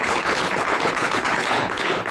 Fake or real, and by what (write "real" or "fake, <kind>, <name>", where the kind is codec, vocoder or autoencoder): fake, codec, HILCodec